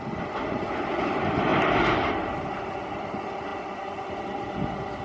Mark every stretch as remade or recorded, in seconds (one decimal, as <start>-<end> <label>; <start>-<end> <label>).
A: 0.0-5.0 recorded